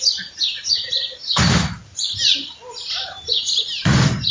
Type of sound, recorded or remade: recorded